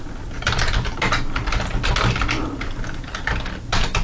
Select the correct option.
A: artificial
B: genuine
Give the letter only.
B